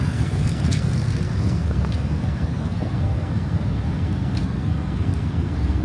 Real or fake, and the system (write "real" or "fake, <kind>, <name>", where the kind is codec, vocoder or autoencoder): fake, codec, SNAC